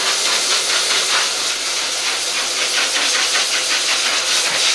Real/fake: real